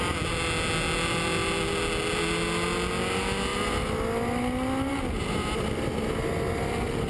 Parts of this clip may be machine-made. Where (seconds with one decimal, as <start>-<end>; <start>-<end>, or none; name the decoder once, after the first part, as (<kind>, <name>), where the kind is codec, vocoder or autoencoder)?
none